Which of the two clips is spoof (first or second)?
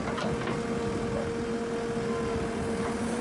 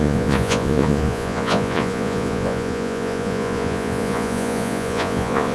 second